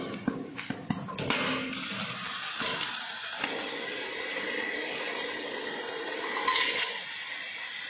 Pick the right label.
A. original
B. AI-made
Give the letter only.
A